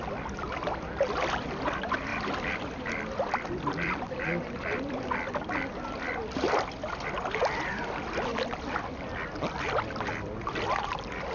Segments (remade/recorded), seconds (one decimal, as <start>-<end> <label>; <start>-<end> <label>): 0.0-2.1 recorded; 2.1-5.3 remade; 5.3-8.3 recorded; 8.3-8.9 remade; 8.9-11.3 recorded